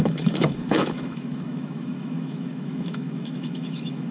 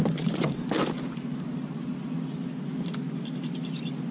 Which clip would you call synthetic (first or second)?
first